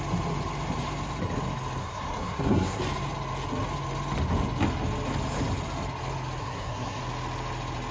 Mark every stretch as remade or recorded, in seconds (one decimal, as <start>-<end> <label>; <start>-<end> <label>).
0.0-1.8 recorded; 1.8-2.8 remade; 2.8-6.4 recorded; 6.4-7.0 remade; 7.0-7.9 recorded

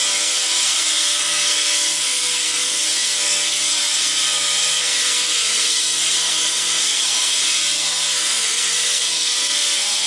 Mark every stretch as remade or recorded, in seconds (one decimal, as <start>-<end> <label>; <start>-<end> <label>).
0.0-10.1 remade

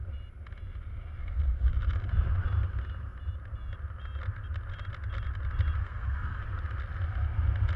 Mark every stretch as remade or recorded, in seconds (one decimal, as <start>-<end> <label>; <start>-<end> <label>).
0.0-1.2 recorded; 1.2-1.7 remade; 1.7-5.8 recorded; 5.8-6.4 remade; 6.4-7.8 recorded

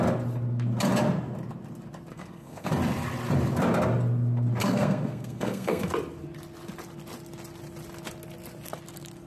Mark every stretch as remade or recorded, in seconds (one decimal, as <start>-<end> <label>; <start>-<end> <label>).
0.0-2.1 recorded; 2.1-2.7 remade; 2.7-4.6 recorded; 4.6-5.9 remade; 5.9-9.3 recorded

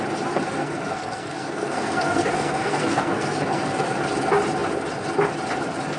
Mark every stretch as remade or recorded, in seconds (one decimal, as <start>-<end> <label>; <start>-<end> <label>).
0.0-0.4 recorded; 0.4-4.0 remade; 4.0-6.0 recorded

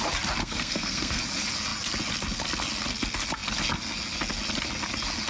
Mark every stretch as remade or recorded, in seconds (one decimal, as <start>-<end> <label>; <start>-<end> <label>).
0.0-0.4 recorded; 0.4-1.2 remade; 1.2-5.3 recorded

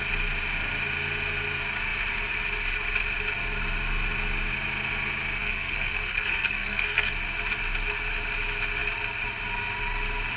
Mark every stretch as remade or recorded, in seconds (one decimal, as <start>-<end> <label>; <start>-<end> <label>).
0.0-5.4 recorded; 5.4-7.1 remade; 7.1-10.4 recorded